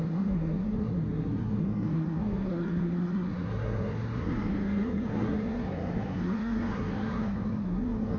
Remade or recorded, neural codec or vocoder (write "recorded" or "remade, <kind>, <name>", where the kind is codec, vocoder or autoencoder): remade, codec, SNAC